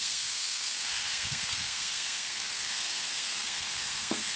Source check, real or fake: fake